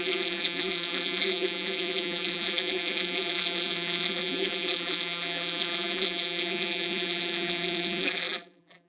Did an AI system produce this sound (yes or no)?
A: yes